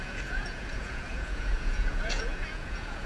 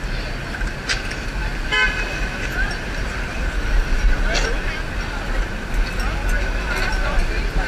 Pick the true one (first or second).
second